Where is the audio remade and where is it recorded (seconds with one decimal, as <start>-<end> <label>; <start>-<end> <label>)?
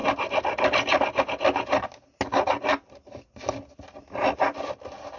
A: 0.0-5.2 recorded